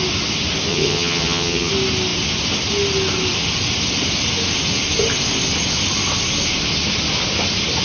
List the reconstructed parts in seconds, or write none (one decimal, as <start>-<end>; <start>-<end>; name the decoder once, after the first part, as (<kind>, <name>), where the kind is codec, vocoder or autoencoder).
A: 0.7-1.7 (vocoder, HiFi-GAN)